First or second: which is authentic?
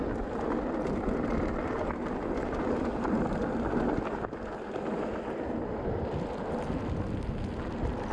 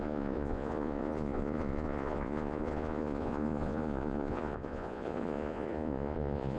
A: first